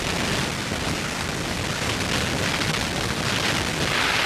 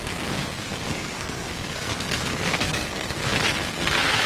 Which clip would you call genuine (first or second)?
first